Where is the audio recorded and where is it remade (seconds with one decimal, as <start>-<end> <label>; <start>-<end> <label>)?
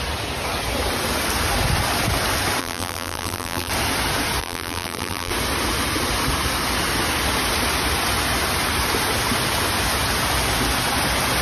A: 0.0-2.6 recorded; 2.6-3.7 remade; 3.7-4.4 recorded; 4.4-5.3 remade; 5.3-11.4 recorded